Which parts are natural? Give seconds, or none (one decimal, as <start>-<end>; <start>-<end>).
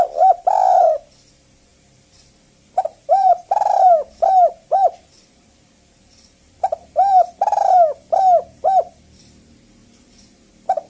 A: 7.1-9.2